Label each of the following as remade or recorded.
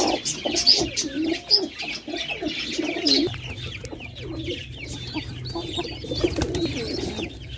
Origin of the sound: recorded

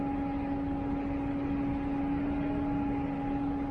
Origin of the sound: recorded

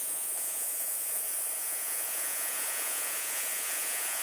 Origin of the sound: remade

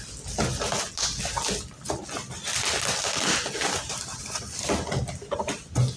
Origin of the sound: recorded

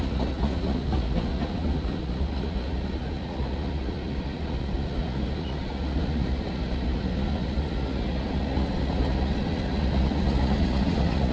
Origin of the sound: remade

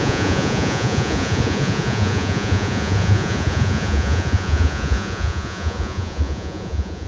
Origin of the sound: remade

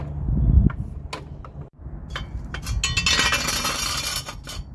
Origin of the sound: recorded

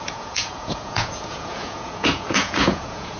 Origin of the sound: remade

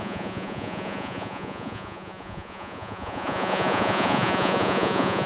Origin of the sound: remade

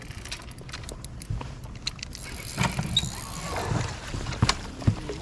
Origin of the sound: recorded